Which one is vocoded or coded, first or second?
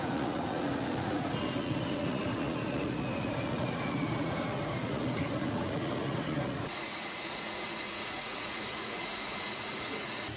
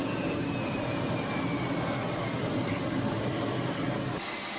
first